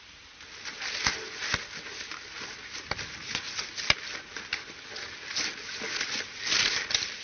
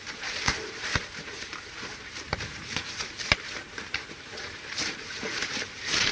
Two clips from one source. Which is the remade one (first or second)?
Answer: second